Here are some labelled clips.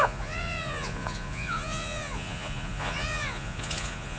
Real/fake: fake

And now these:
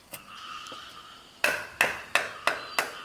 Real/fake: real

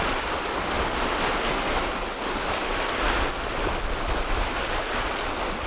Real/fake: real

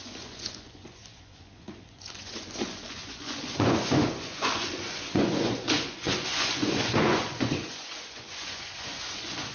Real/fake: fake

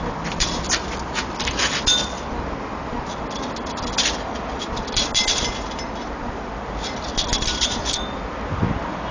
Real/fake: real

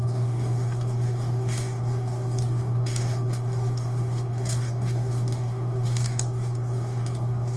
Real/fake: fake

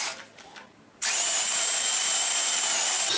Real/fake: fake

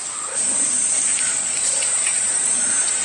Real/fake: fake